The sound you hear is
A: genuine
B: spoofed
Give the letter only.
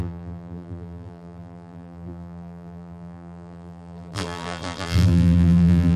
B